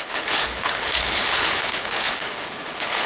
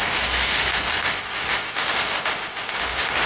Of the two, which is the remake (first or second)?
first